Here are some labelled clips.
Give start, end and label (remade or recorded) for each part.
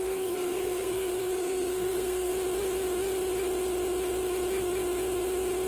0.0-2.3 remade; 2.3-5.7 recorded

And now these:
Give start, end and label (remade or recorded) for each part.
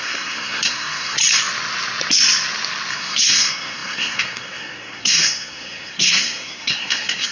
0.0-1.2 remade; 1.2-2.9 recorded; 2.9-7.3 remade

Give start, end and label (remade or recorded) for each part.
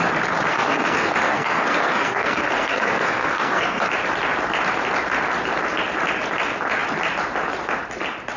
0.0-0.5 recorded; 0.5-3.9 remade; 3.9-8.4 recorded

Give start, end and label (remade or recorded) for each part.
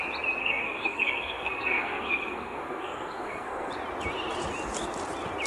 0.0-0.4 recorded; 0.4-3.7 remade; 3.7-5.5 recorded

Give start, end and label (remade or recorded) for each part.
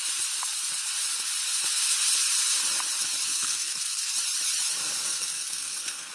0.0-3.3 recorded; 3.3-4.1 remade; 4.1-5.1 recorded; 5.1-6.1 remade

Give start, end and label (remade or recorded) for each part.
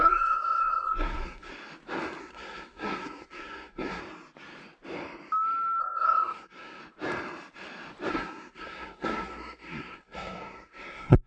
0.0-1.5 remade; 1.5-2.2 recorded; 2.2-4.0 remade; 4.0-5.8 recorded; 5.8-6.8 remade; 6.8-8.1 recorded; 8.1-11.3 remade